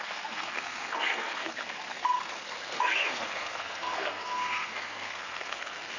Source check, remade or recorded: remade